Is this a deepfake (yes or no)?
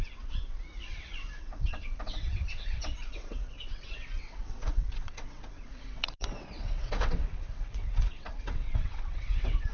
yes